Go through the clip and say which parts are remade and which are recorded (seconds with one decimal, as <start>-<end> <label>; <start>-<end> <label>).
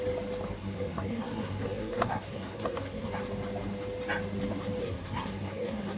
0.0-0.6 recorded; 0.6-3.1 remade; 3.1-4.8 recorded; 4.8-6.0 remade